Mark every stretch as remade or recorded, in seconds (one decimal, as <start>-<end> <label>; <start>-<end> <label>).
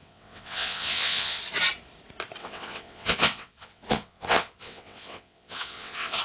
0.0-1.4 remade; 1.4-2.4 recorded; 2.4-6.2 remade